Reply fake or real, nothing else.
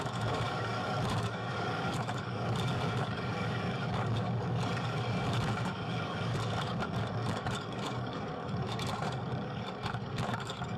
fake